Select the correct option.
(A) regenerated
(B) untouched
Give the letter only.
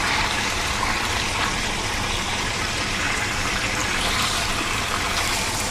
A